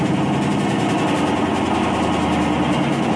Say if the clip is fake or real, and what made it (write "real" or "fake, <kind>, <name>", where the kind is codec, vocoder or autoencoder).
real